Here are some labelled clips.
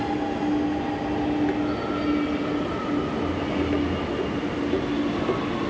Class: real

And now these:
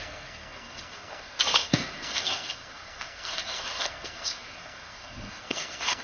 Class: fake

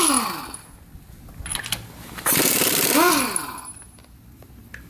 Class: real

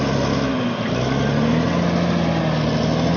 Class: real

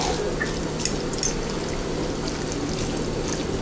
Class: real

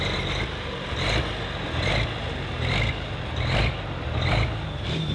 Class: real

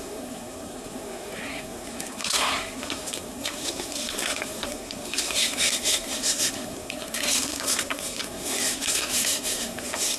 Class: fake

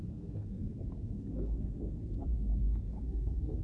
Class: fake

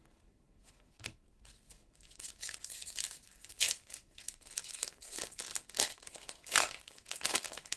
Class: fake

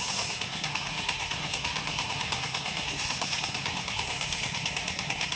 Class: fake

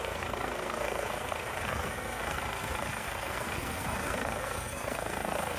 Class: fake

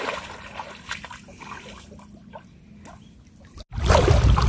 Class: real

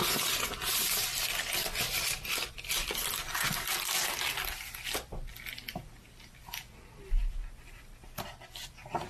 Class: real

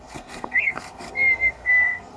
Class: fake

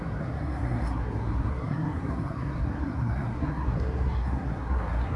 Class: fake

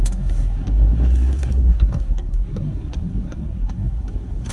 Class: fake